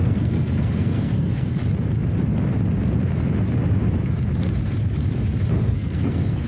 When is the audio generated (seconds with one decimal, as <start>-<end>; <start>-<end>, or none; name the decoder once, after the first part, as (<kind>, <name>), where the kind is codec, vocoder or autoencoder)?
0.0-1.6 (codec, SNAC); 5.5-6.5